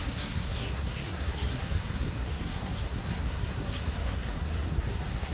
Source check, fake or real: fake